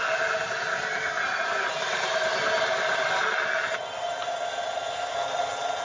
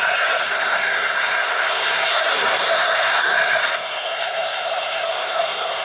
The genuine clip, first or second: first